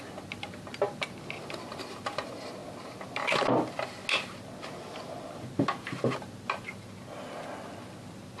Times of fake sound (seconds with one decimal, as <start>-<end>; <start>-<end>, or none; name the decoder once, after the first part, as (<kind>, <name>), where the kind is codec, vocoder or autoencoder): none